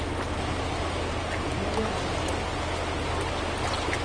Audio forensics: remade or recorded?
recorded